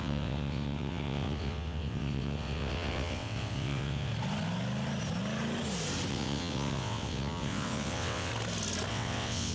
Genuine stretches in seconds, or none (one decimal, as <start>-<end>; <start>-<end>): 4.1-6.1; 8.3-8.9